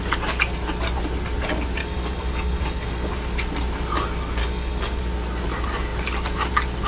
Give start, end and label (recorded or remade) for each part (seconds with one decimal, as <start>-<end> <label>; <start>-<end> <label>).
0.0-1.8 recorded; 1.8-3.1 remade; 3.1-4.4 recorded; 4.4-5.0 remade; 5.0-6.9 recorded